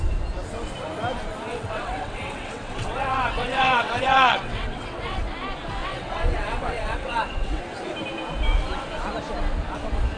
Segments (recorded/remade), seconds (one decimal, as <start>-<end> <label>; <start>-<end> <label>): 0.0-1.5 recorded; 1.5-5.2 remade; 5.2-5.8 recorded; 5.8-7.6 remade; 7.6-10.2 recorded